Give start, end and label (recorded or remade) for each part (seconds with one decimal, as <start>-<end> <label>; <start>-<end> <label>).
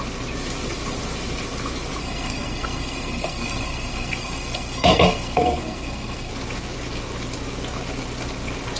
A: 0.0-2.0 recorded; 2.0-6.3 remade; 6.3-8.8 recorded